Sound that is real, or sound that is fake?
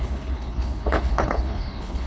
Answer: fake